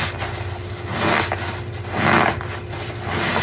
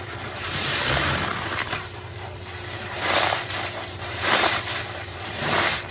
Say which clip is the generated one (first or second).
second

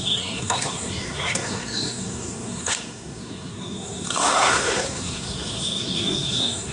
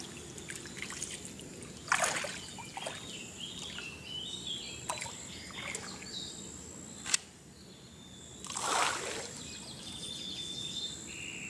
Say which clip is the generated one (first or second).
first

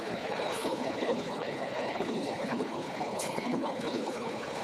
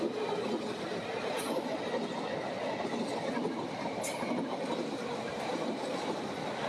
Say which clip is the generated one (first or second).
first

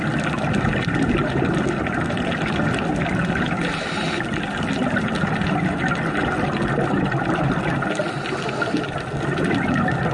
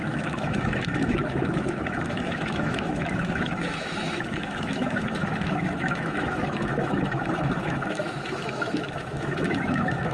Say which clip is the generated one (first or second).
second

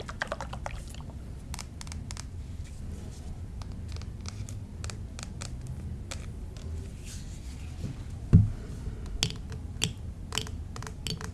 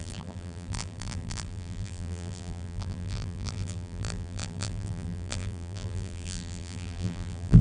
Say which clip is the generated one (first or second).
second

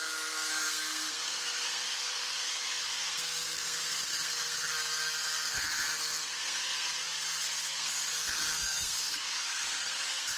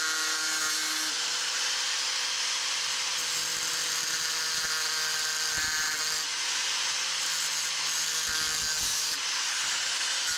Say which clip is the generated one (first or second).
first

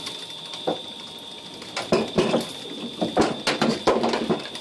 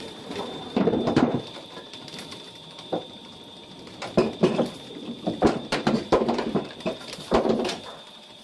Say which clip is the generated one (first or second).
second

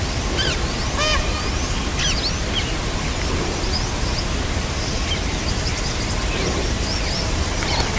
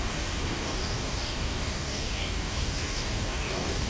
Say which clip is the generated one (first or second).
second